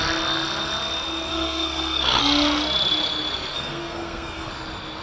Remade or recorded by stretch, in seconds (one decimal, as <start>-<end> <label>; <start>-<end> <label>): 0.0-1.3 recorded; 1.3-2.2 remade; 2.2-3.5 recorded; 3.5-4.5 remade; 4.5-5.0 recorded